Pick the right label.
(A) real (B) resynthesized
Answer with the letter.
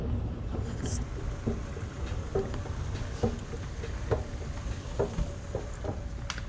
A